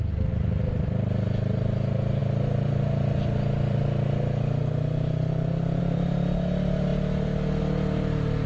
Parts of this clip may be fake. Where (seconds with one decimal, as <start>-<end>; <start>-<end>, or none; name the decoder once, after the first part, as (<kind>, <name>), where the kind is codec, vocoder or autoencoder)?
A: none